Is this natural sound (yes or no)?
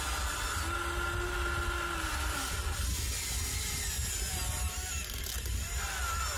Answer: yes